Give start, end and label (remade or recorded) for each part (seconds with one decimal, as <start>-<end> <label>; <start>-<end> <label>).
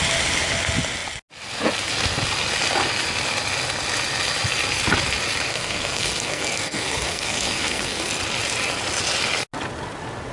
0.0-5.5 recorded; 5.5-8.1 remade; 8.1-10.3 recorded